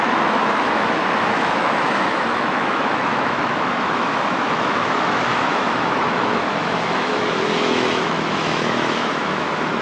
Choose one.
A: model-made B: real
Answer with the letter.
A